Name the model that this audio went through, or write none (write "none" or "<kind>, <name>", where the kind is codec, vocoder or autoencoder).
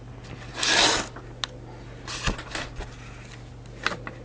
none